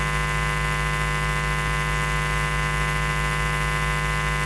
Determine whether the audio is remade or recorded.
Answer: recorded